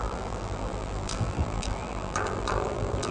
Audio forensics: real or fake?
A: fake